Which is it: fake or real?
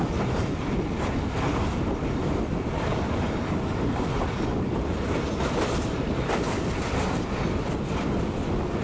real